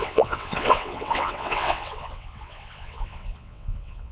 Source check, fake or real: fake